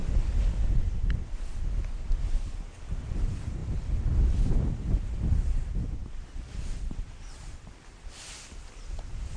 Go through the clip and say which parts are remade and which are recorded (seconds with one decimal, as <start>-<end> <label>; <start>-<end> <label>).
0.0-9.4 recorded